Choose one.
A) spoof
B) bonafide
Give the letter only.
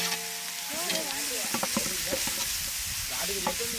B